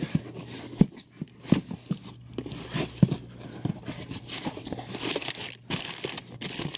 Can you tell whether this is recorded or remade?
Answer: recorded